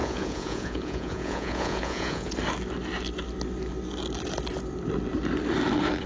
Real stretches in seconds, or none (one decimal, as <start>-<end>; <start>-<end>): 2.3-6.1